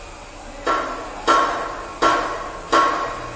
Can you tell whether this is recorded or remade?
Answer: recorded